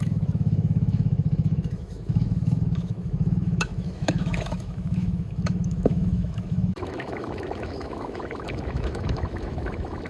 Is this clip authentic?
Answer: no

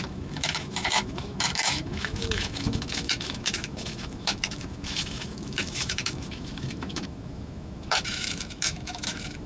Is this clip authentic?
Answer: no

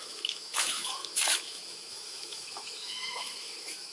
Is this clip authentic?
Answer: no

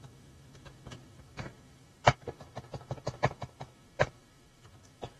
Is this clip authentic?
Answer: no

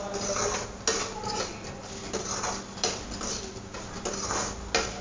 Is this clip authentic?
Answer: yes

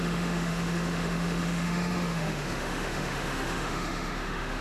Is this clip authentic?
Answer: no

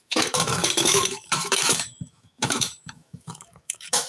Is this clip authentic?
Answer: no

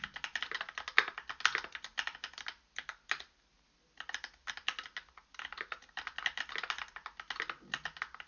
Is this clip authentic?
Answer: yes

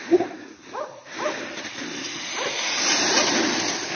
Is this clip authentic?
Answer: yes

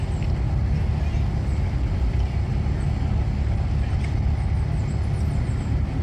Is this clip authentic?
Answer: yes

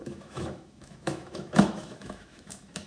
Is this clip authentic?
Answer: no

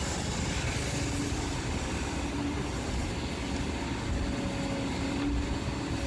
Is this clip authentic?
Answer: yes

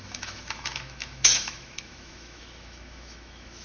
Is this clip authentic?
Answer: no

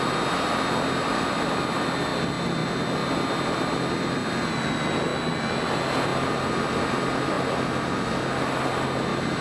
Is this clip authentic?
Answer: yes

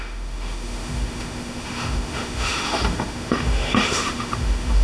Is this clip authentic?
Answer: no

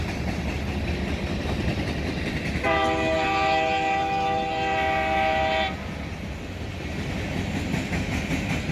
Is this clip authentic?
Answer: yes